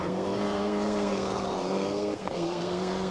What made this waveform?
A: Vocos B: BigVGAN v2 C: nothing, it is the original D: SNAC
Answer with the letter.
D